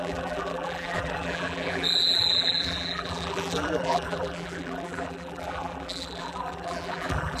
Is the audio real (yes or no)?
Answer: no